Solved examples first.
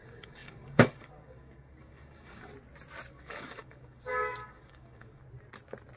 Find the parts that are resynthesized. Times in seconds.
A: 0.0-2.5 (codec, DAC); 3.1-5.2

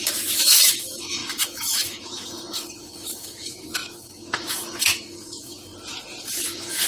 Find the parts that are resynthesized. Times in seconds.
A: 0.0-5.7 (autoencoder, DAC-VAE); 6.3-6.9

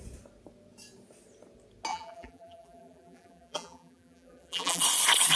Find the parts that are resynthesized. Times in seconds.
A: 1.9-4.8 (vocoder, BigVGAN v2)

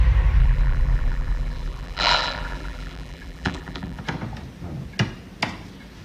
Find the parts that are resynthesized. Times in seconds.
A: 0.4-4.0 (vocoder, BigVGAN v2)

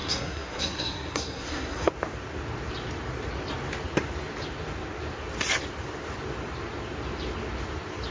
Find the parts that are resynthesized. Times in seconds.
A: 0.0-1.9 (codec, SNAC)

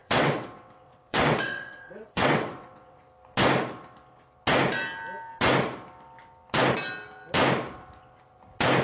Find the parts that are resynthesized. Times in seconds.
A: 0.0-3.0 (vocoder, WaveNeXt)

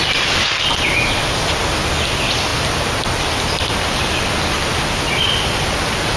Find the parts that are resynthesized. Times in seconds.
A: none